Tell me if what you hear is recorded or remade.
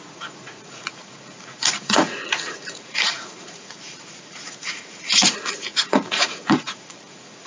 remade